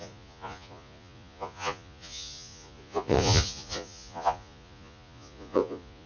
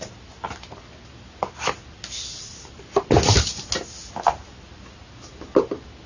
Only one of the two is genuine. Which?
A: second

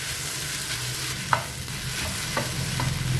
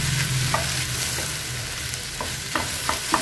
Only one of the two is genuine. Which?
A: first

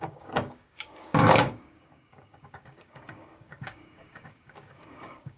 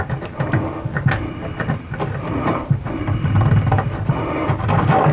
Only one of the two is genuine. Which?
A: second